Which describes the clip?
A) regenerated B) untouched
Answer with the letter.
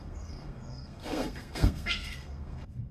A